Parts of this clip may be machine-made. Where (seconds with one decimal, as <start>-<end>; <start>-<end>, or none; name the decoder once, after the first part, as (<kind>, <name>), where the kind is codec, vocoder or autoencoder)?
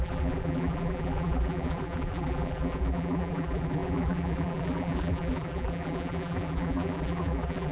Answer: 0.0-7.7 (vocoder, BigVGAN v2)